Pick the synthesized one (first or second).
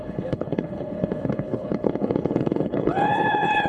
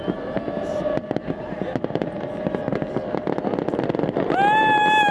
first